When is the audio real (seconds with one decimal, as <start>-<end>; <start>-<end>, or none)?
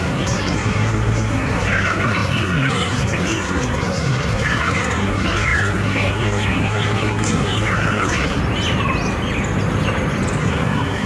8.4-10.4